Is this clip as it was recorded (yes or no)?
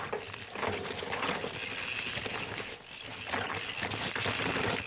yes